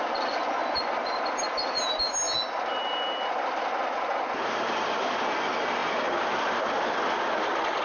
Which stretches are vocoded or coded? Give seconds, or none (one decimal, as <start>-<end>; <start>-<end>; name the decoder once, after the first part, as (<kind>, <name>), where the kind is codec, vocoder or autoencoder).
none